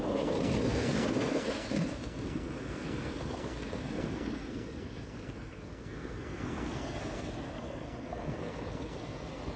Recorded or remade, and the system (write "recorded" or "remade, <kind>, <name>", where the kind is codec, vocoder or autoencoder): remade, codec, SNAC